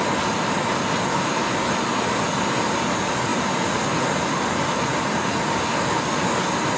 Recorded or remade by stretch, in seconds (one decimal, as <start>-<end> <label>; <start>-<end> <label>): 0.0-6.8 recorded